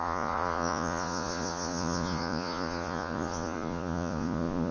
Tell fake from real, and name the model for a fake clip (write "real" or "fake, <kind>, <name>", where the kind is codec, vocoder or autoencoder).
fake, vocoder, Vocos